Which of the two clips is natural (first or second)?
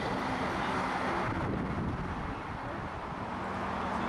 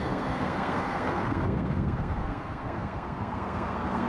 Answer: first